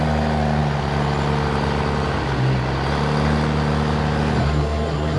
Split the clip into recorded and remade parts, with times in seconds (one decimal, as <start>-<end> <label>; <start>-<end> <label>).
0.0-4.4 recorded; 4.4-5.2 remade